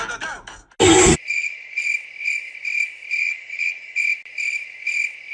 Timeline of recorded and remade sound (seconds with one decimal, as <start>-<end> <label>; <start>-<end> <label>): 0.0-1.3 recorded; 1.3-1.8 remade; 1.8-3.2 recorded; 3.2-4.0 remade; 4.0-5.3 recorded